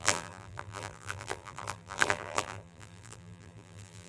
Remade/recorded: remade